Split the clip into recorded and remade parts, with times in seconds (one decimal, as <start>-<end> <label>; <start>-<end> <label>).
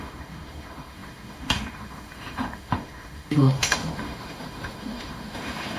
0.0-5.8 remade